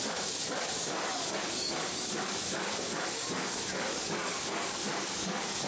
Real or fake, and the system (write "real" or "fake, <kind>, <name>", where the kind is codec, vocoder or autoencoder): fake, codec, DAC